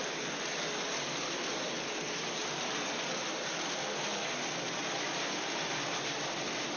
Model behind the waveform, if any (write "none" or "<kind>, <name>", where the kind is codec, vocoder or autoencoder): none